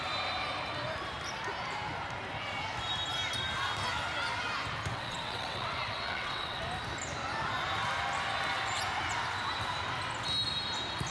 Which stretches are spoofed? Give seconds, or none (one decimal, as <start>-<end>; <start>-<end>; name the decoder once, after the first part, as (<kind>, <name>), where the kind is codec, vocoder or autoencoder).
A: 4.9-6.6 (vocoder, WaveNeXt)